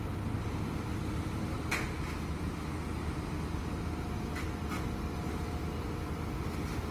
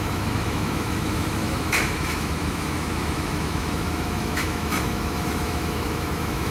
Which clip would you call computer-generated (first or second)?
second